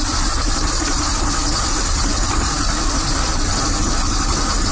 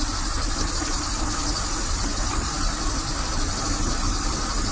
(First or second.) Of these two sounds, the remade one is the first